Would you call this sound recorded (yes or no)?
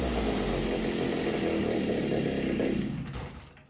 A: yes